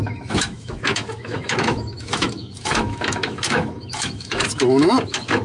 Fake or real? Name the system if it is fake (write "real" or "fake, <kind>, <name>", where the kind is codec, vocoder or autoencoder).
fake, autoencoder, DAC-VAE